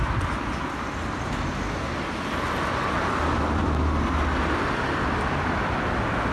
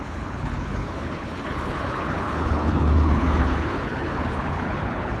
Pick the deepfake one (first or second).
second